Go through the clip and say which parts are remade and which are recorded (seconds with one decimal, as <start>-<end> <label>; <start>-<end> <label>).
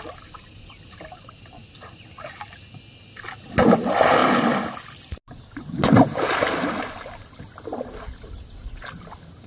0.0-9.5 recorded